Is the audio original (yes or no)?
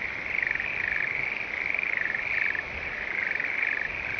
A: yes